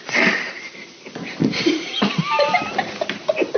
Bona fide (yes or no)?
no